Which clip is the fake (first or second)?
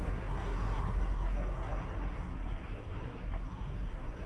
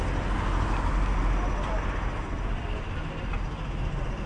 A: first